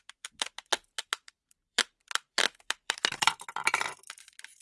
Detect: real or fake fake